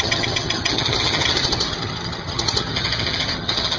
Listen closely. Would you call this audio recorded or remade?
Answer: remade